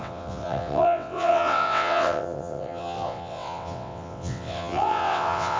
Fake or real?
fake